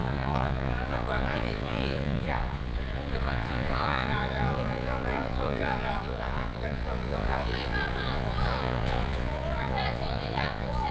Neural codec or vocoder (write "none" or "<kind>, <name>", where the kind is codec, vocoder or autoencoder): vocoder, Vocos